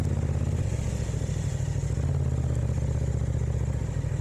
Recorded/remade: recorded